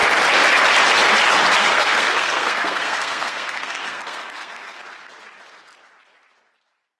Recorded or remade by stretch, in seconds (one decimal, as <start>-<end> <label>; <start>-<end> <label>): 0.0-1.6 recorded; 1.6-4.8 remade; 4.8-7.0 recorded